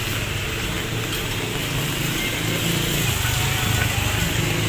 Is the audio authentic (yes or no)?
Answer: yes